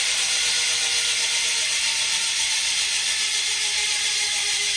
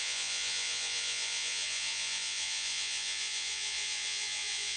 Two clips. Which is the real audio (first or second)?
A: first